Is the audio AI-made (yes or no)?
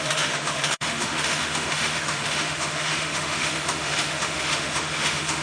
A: yes